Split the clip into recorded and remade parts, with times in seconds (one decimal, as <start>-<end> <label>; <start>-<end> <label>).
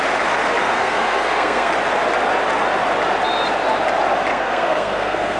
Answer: 0.0-0.6 recorded; 0.6-1.7 remade; 1.7-4.3 recorded; 4.3-5.4 remade